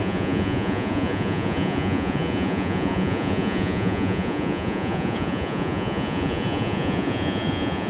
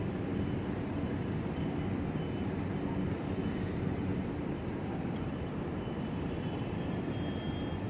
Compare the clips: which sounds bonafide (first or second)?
second